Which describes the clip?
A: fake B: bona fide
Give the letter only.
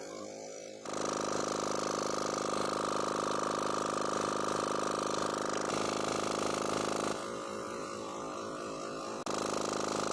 B